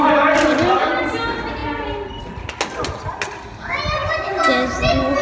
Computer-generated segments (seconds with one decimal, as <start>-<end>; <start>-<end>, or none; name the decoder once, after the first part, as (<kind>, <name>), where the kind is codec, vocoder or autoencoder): none